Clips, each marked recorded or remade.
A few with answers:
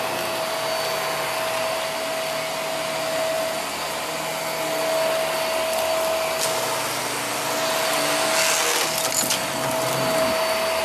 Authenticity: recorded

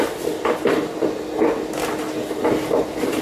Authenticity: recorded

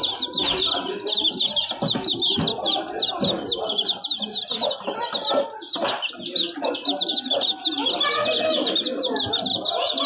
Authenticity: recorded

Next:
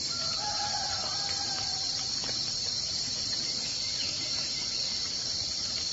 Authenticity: remade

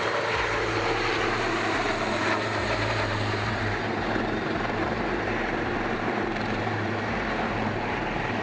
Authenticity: remade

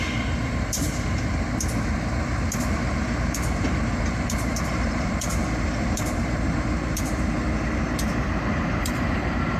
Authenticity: remade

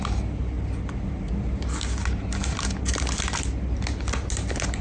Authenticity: recorded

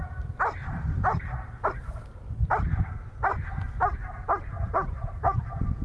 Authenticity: recorded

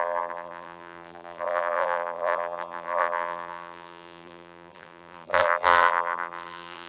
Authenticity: remade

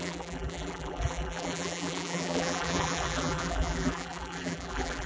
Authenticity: remade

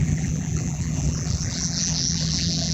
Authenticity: remade